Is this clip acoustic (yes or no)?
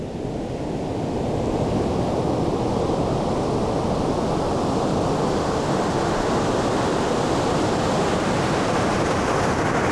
yes